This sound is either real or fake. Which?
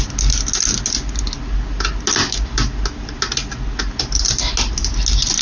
real